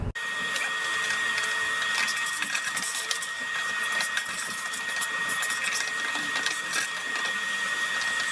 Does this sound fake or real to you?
real